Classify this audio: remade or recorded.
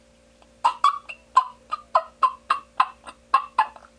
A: recorded